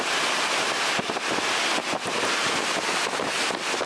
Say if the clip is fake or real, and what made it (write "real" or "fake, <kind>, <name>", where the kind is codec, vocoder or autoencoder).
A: real